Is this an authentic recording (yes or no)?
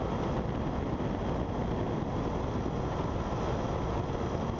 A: yes